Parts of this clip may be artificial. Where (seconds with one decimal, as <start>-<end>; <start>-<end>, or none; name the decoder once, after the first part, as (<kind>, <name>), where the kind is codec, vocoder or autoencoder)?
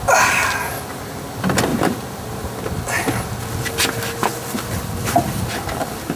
1.7-2.5 (vocoder, BigVGAN v2)